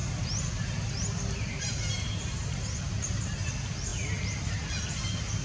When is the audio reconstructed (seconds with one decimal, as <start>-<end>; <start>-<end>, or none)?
none